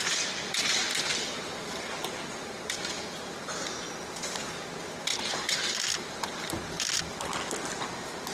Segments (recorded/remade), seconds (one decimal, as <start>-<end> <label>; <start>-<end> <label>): 0.0-0.9 recorded; 0.9-4.6 remade; 4.6-5.1 recorded; 5.1-7.0 remade; 7.0-8.3 recorded